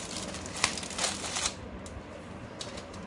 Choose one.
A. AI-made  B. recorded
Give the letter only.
B